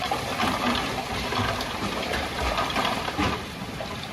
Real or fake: fake